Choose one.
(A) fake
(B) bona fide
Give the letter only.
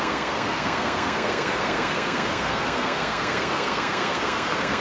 A